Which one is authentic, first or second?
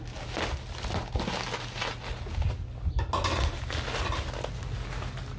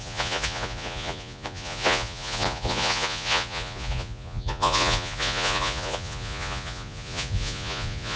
first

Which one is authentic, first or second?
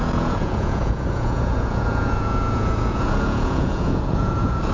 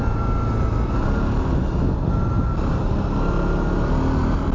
second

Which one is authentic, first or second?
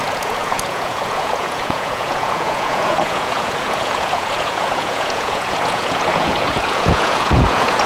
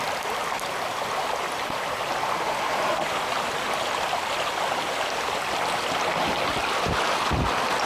second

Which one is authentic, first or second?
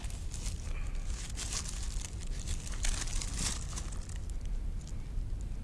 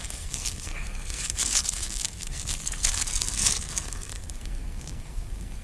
first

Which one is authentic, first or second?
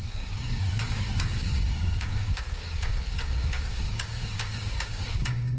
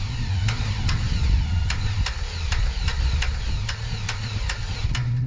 second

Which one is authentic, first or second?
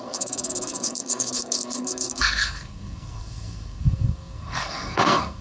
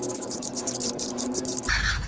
second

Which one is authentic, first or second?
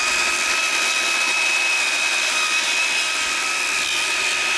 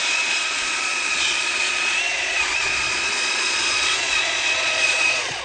first